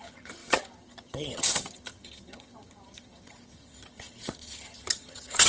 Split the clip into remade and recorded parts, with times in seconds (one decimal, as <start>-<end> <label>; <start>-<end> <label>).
0.0-5.5 remade